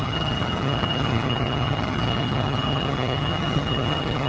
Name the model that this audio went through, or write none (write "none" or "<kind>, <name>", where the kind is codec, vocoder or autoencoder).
vocoder, HiFi-GAN